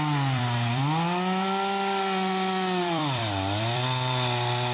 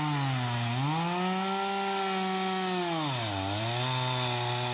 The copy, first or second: first